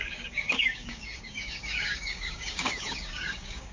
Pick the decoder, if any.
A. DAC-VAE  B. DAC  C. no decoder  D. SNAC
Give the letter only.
B